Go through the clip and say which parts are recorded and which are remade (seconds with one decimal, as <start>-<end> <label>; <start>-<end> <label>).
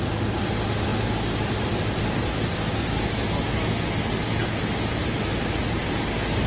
0.0-6.5 recorded